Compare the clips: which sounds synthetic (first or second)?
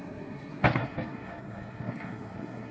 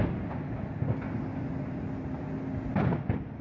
first